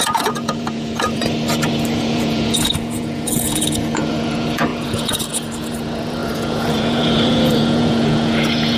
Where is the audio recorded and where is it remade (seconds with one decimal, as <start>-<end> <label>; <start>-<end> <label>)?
0.0-1.2 remade; 1.2-1.9 recorded; 1.9-8.8 remade